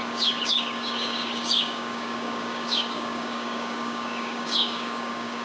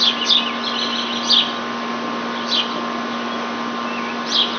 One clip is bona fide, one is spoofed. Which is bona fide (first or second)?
second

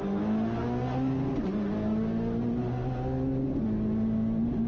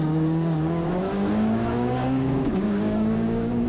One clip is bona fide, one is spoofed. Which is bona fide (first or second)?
first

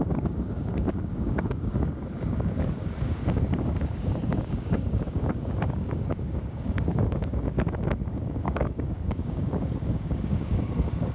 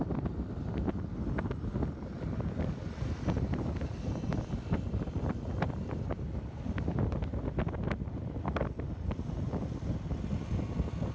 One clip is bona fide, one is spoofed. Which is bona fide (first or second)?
second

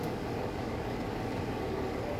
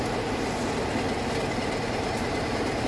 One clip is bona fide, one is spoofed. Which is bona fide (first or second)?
second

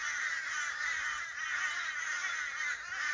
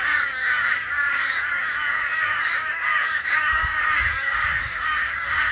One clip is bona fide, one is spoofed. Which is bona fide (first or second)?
first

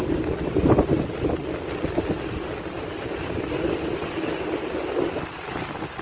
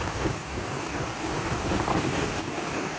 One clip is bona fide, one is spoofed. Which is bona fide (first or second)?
first